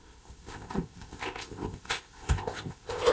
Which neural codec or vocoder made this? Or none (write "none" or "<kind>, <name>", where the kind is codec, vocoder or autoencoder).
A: codec, ZipCodec